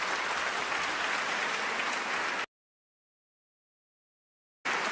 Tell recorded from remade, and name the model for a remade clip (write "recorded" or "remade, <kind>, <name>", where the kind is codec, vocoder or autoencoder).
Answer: recorded